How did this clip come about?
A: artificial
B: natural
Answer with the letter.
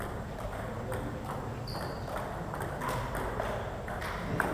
B